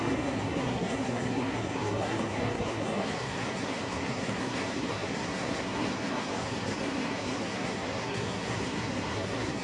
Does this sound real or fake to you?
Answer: fake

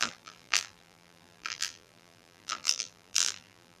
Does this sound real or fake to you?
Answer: fake